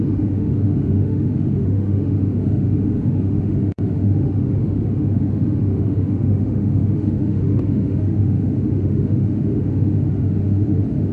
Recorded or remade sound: remade